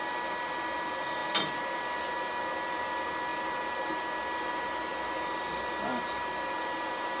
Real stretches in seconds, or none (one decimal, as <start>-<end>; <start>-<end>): 0.0-7.2